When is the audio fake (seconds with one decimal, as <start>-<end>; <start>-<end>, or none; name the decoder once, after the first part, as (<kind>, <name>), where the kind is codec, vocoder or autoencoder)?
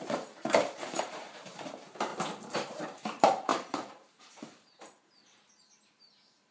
0.0-2.1 (vocoder, BigVGAN v2); 2.8-6.5